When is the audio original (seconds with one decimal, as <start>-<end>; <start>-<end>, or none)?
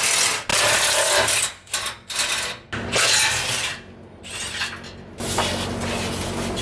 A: 0.0-6.6